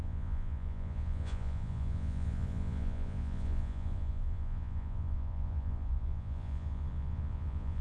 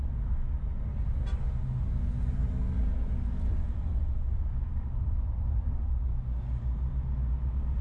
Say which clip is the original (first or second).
second